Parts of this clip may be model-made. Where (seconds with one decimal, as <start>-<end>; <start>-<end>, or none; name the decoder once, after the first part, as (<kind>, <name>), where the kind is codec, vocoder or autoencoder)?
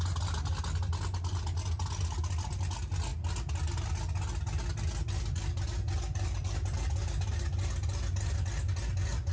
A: none